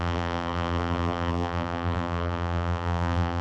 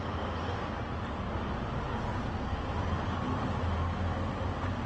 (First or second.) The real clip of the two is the second